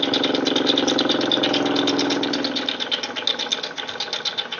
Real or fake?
real